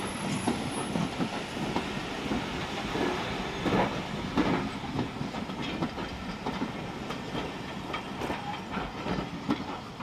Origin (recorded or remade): recorded